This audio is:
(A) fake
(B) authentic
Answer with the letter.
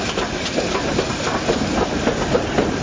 B